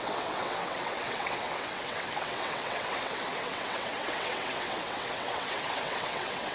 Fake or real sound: fake